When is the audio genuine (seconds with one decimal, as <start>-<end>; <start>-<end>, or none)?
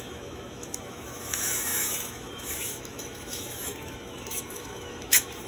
none